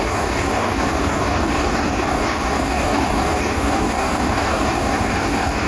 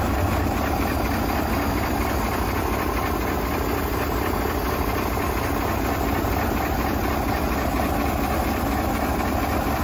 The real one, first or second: second